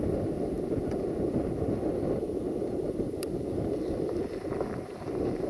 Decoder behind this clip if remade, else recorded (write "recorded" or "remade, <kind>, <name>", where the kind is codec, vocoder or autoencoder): recorded